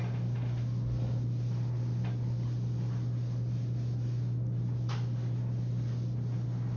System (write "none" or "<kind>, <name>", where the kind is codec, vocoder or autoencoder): none